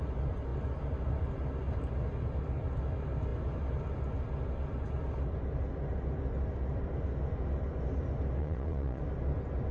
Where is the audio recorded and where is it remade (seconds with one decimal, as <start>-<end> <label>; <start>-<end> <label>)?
0.0-8.4 recorded; 8.4-9.0 remade; 9.0-9.7 recorded

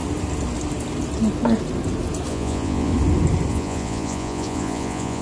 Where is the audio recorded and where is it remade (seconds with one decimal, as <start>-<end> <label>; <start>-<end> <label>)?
0.0-2.3 recorded; 2.3-2.9 remade; 2.9-3.5 recorded; 3.5-5.2 remade

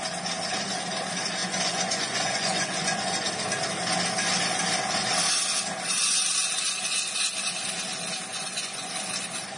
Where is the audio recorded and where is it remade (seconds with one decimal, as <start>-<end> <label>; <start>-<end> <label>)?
0.0-1.4 recorded; 1.4-3.3 remade; 3.3-8.3 recorded; 8.3-8.9 remade; 8.9-9.6 recorded

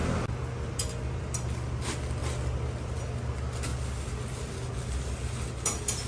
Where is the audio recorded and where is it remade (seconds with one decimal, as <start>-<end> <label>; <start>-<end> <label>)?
0.0-6.1 recorded